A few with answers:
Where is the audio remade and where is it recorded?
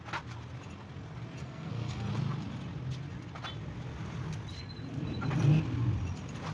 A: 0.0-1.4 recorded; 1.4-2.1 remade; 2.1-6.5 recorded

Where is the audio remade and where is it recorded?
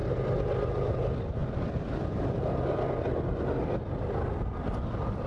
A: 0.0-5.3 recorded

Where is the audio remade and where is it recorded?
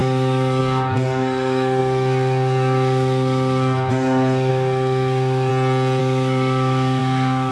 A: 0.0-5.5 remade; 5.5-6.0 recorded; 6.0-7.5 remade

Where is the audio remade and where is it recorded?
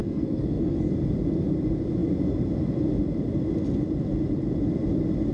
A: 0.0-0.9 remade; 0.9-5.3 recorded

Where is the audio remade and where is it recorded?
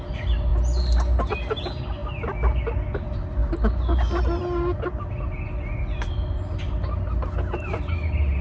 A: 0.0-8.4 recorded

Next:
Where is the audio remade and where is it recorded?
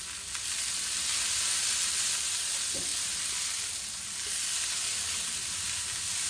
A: 0.0-6.3 recorded